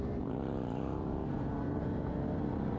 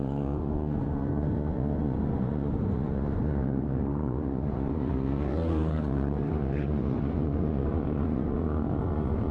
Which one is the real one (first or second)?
first